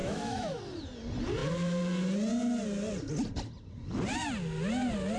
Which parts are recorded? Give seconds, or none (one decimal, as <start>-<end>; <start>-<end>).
0.6-5.2